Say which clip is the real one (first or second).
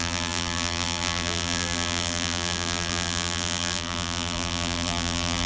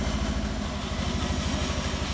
second